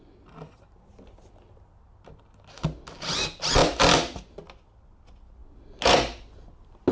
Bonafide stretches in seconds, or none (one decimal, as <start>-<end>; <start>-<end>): 0.0-6.9